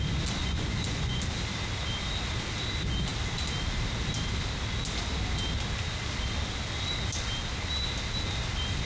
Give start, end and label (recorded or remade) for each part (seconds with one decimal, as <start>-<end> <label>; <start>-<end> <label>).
0.0-0.4 recorded; 0.4-1.2 remade; 1.2-8.8 recorded